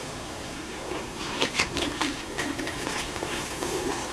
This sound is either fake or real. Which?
fake